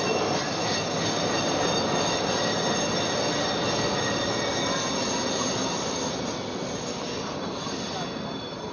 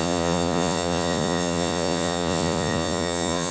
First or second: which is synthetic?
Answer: second